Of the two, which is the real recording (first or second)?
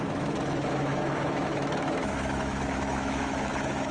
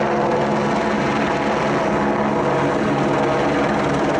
second